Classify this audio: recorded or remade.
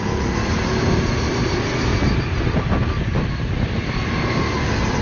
recorded